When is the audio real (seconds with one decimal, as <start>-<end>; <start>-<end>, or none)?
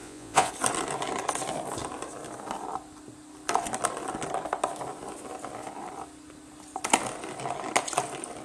0.5-8.4